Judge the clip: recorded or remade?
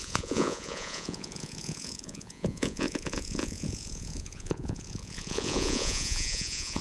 remade